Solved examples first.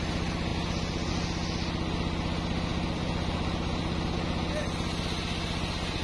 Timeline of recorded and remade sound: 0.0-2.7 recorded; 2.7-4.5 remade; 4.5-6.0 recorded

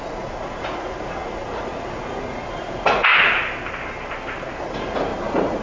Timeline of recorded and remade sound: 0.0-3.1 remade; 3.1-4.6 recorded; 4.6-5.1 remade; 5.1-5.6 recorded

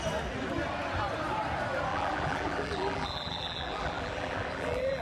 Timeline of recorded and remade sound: 0.0-1.9 recorded; 1.9-5.0 remade

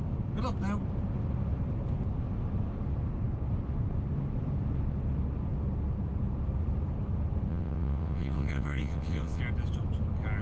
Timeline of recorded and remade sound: 0.0-7.5 recorded; 7.5-9.4 remade; 9.4-10.4 recorded

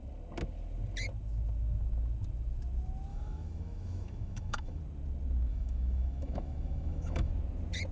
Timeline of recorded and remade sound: 0.0-3.1 recorded; 3.1-4.8 remade; 4.8-5.5 recorded; 5.5-7.3 remade; 7.3-7.9 recorded